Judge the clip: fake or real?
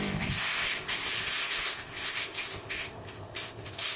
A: fake